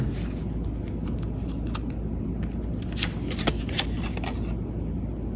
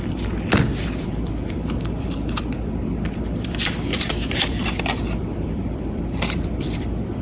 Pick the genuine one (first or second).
first